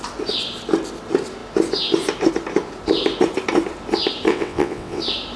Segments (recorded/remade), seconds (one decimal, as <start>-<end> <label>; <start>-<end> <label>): 0.0-4.3 recorded; 4.3-5.0 remade; 5.0-5.4 recorded

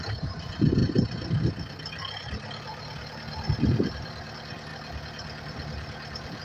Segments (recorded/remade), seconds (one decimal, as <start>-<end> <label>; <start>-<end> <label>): 0.0-0.8 remade; 0.8-1.4 recorded; 1.4-2.7 remade; 2.7-3.8 recorded; 3.8-6.4 remade